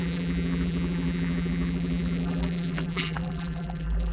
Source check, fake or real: fake